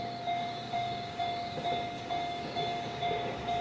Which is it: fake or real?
fake